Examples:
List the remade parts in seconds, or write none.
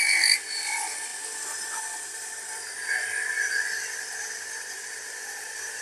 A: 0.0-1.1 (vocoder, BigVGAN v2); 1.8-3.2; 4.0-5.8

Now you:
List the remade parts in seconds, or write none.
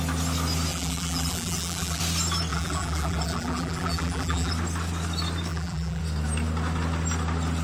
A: 0.7-2.0 (vocoder, BigVGAN v2); 2.5-4.5; 5.5-6.0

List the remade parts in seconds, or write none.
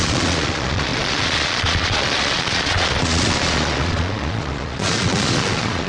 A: 0.0-5.9 (vocoder, Vocos)